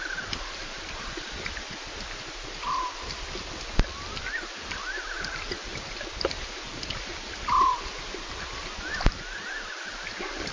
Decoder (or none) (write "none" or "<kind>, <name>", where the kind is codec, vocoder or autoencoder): none